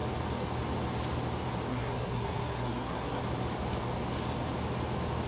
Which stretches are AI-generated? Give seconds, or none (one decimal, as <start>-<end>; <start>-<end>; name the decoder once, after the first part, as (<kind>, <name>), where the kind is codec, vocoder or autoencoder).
1.7-3.2 (codec, SNAC)